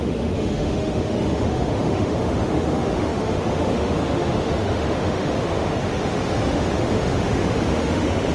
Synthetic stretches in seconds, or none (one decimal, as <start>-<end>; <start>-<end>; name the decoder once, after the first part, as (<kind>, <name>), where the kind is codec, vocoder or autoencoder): 0.0-8.3 (autoencoder, DAC-VAE)